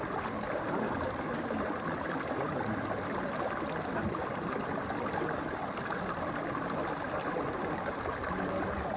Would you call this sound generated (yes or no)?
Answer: no